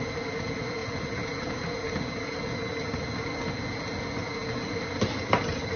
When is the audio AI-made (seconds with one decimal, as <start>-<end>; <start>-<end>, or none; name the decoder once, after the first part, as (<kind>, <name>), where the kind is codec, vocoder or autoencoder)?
none